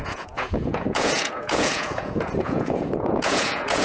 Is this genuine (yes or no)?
no